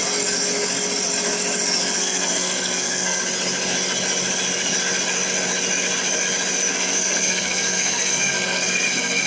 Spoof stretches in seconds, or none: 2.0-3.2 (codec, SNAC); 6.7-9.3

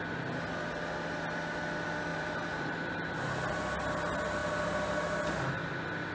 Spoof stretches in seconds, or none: 2.1-3.1 (vocoder, BigVGAN v2)